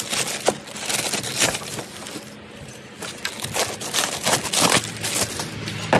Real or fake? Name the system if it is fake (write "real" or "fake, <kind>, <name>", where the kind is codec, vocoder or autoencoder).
real